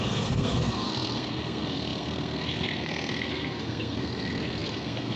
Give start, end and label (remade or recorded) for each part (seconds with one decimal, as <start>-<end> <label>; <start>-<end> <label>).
0.0-5.2 remade